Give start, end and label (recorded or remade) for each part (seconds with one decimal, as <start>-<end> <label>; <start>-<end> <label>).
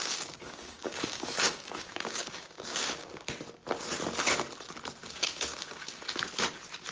0.0-3.1 remade; 3.1-5.0 recorded; 5.0-5.9 remade; 5.9-6.9 recorded